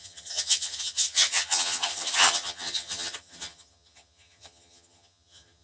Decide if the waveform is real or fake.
fake